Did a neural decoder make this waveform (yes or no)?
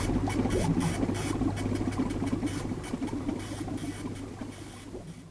no